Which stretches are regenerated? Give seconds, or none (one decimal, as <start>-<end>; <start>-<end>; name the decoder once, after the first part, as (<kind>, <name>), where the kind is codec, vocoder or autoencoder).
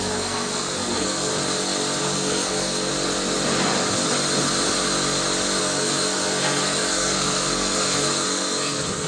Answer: 0.0-1.3 (codec, SNAC); 2.0-2.9; 5.6-9.1